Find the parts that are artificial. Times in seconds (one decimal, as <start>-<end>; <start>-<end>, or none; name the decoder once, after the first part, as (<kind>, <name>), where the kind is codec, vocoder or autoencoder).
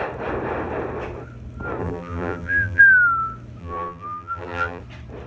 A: 1.8-2.8 (vocoder, BigVGAN v2); 3.6-4.8